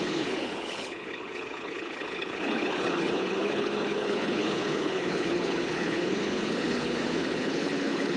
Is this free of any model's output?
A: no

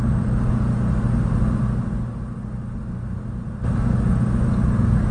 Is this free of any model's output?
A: yes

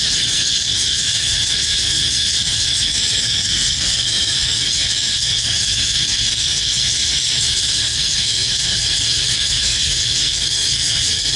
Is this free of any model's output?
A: no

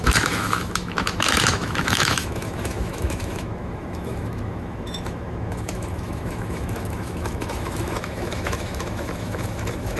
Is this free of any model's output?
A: no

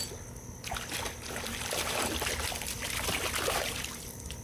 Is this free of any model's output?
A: yes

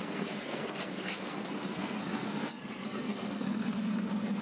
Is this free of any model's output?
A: no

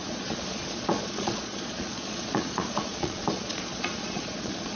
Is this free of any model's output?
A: no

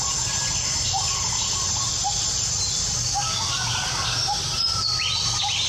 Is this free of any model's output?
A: no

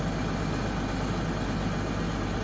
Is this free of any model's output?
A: yes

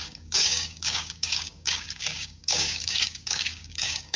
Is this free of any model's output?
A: no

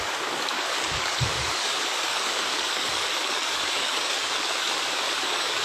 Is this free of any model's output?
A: no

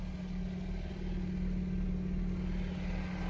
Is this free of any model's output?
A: yes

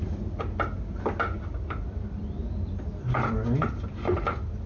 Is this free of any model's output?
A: yes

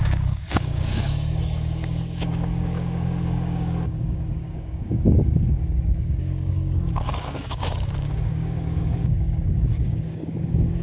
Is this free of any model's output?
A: no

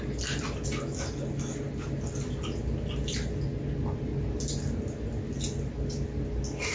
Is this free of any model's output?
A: yes